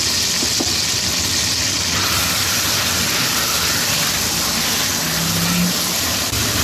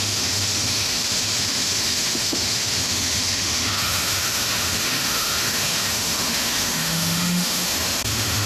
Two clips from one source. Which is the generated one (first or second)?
second